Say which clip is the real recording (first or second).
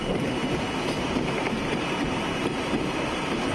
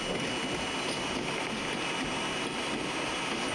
second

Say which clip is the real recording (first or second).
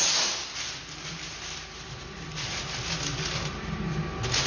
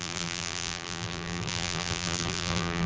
first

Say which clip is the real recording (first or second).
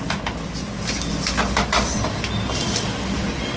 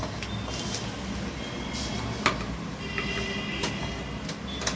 second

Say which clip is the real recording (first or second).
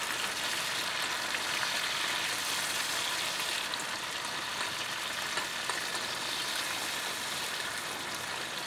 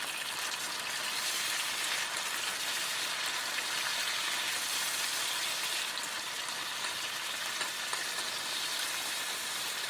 first